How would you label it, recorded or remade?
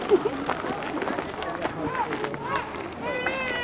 recorded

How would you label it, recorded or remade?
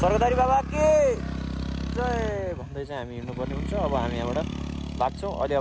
recorded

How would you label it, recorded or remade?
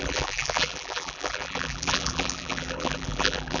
remade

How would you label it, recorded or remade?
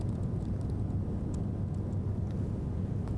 recorded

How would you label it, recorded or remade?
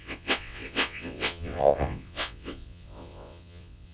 remade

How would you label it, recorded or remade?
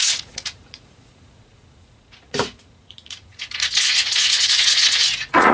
remade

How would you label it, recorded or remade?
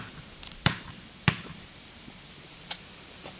remade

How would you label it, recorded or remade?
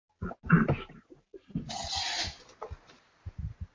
recorded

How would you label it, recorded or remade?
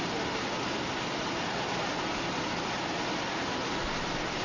recorded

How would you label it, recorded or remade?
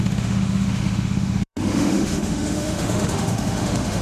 remade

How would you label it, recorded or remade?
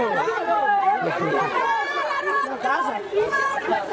remade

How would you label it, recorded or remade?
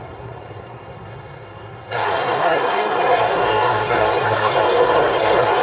remade